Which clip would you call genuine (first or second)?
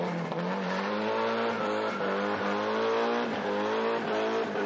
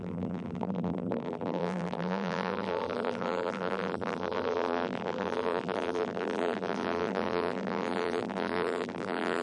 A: first